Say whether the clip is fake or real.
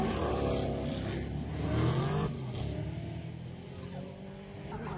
real